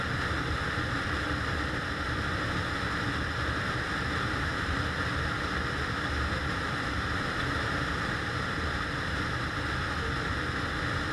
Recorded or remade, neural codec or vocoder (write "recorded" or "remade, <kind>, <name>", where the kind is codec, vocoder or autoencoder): recorded